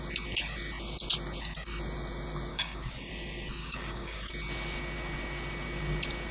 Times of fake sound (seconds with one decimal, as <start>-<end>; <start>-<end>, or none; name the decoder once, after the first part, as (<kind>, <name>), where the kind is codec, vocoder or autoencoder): 2.5-3.1 (codec, DAC); 3.6-4.3